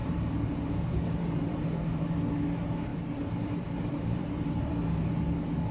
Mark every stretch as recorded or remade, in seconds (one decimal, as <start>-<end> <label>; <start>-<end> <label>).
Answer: 0.0-2.0 remade; 2.0-2.9 recorded; 2.9-5.1 remade; 5.1-5.7 recorded